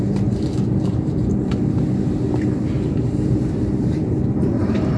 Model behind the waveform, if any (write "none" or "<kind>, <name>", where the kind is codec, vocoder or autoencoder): vocoder, BigVGAN v2